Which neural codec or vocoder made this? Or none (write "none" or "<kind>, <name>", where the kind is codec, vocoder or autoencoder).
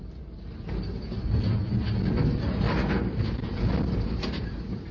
none